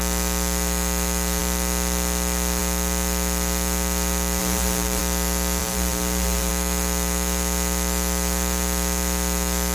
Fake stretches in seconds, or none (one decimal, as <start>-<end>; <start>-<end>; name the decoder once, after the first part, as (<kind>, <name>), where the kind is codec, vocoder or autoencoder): 4.4-5.0 (vocoder, BigVGAN v2); 5.6-6.5